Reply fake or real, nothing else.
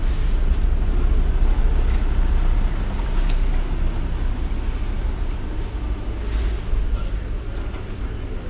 real